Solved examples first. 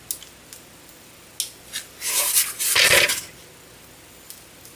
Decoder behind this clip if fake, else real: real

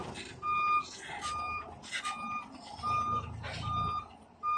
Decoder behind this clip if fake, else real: real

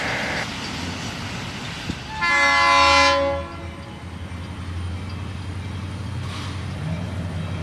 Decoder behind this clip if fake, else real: real